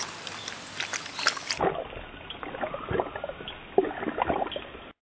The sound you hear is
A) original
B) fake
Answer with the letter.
A